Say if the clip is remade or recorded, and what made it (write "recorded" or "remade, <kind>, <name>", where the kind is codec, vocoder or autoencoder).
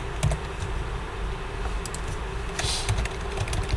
recorded